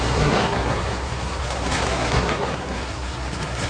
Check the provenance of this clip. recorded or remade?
remade